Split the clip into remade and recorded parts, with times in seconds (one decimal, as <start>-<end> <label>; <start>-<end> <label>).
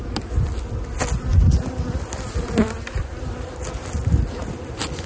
0.0-5.1 recorded